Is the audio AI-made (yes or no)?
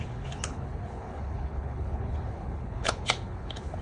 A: yes